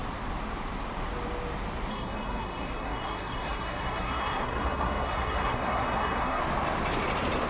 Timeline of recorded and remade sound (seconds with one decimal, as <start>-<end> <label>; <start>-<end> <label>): 0.0-1.9 recorded; 1.9-6.4 remade; 6.4-7.5 recorded